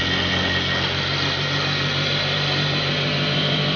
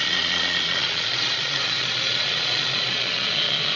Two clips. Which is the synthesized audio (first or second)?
second